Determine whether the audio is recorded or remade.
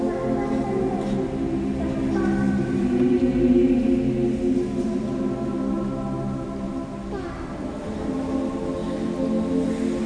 recorded